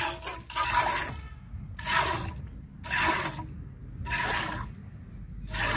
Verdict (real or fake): real